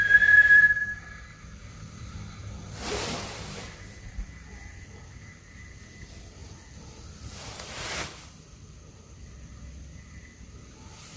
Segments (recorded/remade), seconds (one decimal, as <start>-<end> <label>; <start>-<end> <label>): 0.0-6.4 remade; 6.4-7.4 recorded; 7.4-11.2 remade